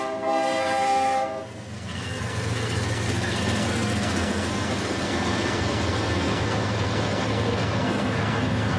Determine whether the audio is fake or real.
fake